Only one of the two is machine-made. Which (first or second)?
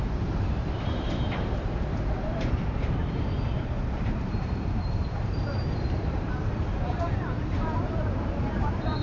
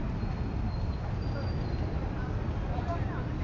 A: first